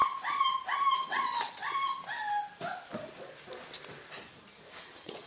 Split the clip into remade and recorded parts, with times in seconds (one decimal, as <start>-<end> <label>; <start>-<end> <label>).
0.0-1.0 recorded; 1.0-1.6 remade; 1.6-4.8 recorded; 4.8-5.3 remade